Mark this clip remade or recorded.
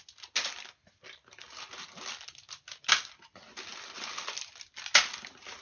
recorded